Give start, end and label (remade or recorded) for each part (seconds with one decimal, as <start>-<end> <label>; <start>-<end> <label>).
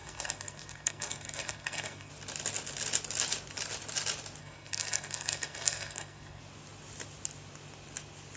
0.0-2.1 remade; 2.1-4.4 recorded; 4.4-6.4 remade; 6.4-8.4 recorded